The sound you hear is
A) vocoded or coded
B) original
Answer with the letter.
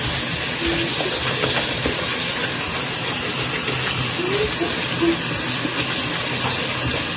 B